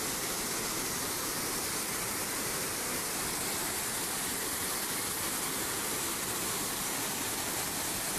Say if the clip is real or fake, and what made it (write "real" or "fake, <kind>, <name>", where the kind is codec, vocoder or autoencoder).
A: real